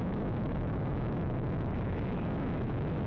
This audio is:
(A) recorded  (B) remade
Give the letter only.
B